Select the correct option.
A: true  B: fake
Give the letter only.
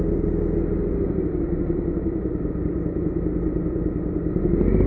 A